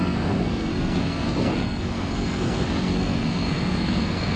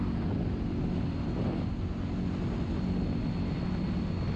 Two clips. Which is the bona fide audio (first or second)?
second